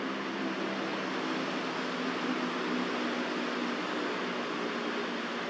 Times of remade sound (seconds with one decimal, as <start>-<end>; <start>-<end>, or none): none